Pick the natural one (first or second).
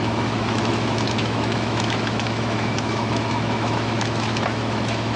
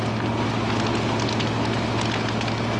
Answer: second